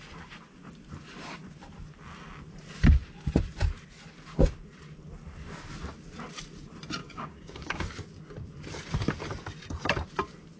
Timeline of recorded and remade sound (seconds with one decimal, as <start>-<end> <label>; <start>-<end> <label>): 0.0-7.0 recorded; 7.0-7.9 remade; 7.9-10.6 recorded